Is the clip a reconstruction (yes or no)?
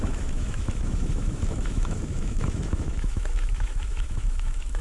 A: yes